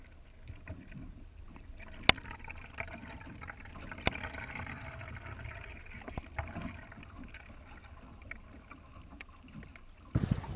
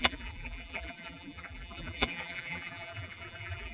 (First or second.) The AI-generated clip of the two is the second